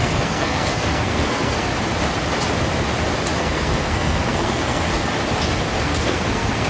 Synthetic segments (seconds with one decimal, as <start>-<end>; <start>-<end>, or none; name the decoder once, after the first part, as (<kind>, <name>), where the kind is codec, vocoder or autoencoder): 0.0-1.7 (codec, SNAC); 3.4-5.1; 5.8-6.7